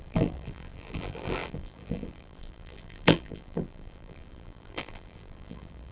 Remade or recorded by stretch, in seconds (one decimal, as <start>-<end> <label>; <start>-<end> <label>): 0.0-5.9 remade